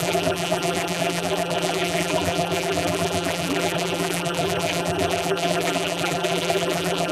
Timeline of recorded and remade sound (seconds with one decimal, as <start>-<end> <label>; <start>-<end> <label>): 0.0-7.1 remade